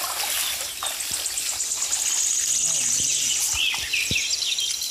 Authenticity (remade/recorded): recorded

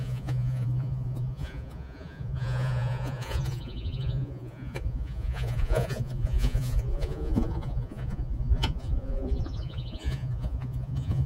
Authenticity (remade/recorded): remade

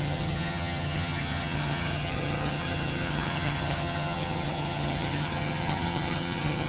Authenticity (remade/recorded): remade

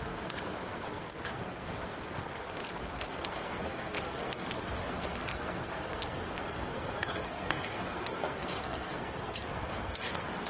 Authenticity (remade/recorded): remade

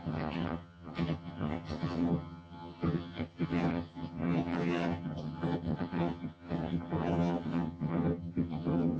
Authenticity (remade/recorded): remade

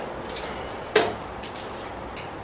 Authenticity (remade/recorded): remade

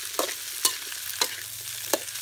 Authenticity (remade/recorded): recorded